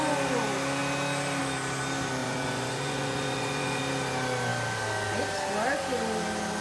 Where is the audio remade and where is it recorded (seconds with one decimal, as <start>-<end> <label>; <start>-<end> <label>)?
0.0-2.2 recorded; 2.2-3.8 remade; 3.8-6.6 recorded